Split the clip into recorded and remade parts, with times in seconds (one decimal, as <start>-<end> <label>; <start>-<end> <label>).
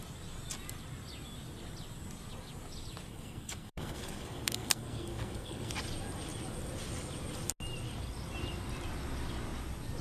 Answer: 0.0-3.1 recorded; 3.1-5.7 remade; 5.7-10.0 recorded